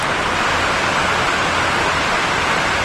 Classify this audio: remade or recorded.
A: recorded